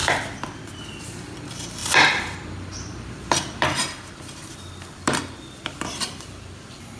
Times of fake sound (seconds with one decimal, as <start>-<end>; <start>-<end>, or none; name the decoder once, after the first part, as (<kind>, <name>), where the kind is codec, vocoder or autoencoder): 1.0-7.0 (vocoder, BigVGAN v2)